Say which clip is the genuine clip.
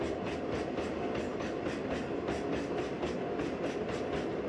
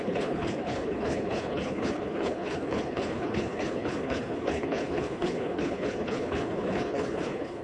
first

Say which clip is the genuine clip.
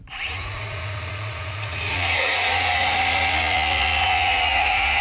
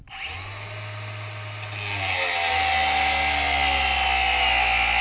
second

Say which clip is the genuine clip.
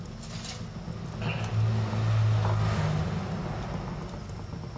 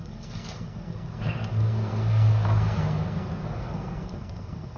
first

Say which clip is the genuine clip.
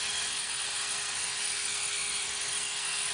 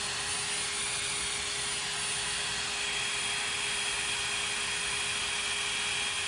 second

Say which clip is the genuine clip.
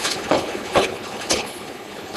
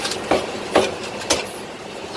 second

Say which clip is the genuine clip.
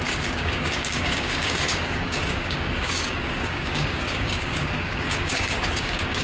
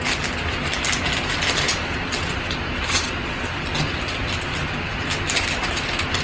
second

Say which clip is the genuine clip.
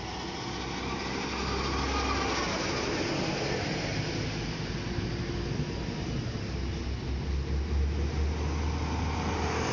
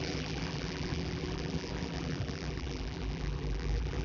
first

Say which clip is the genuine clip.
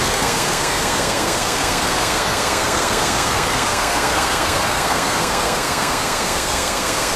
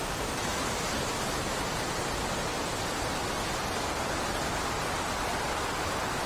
second